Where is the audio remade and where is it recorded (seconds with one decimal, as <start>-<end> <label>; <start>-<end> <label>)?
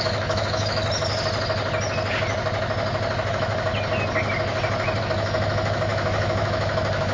0.0-0.8 remade; 0.8-3.3 recorded; 3.3-3.7 remade; 3.7-5.0 recorded; 5.0-7.1 remade